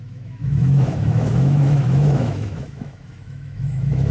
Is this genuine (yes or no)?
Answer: no